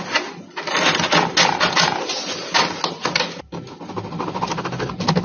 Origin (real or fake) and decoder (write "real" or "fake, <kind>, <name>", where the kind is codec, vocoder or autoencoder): real